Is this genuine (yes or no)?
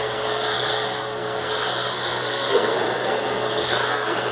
no